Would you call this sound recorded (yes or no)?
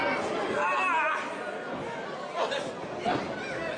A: yes